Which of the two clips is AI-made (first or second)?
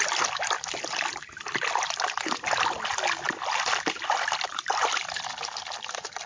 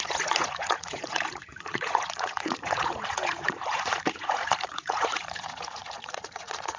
second